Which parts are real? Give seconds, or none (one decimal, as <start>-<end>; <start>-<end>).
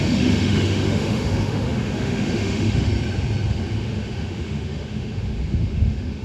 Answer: 2.9-3.5